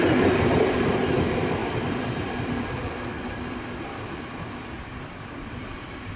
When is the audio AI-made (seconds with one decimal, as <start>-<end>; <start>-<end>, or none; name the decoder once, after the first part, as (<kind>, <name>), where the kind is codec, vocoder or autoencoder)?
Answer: none

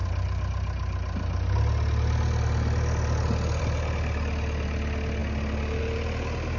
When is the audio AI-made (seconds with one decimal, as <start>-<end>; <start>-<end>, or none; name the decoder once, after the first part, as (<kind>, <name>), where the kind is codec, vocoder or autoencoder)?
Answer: none

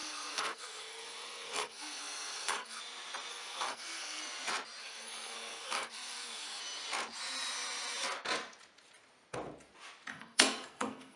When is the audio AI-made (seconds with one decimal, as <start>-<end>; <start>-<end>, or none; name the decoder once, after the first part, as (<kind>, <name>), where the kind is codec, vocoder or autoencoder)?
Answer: 0.0-2.8 (codec, SNAC); 3.3-4.2; 4.8-6.6; 10.1-11.2